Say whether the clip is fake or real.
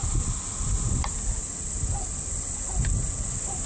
real